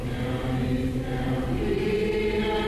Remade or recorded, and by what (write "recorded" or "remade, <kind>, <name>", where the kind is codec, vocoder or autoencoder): recorded